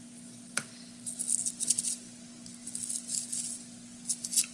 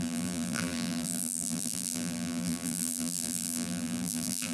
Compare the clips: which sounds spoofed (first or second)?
second